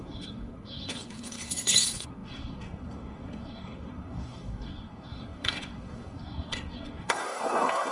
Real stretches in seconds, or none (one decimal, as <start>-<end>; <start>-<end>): none